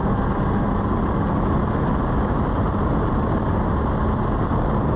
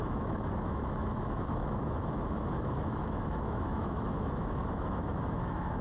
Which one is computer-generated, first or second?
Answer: second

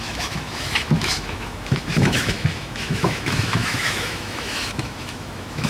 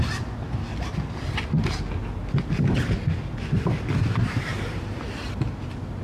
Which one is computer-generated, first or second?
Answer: first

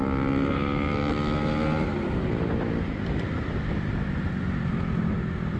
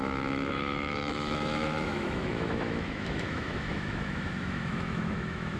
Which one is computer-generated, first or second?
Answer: second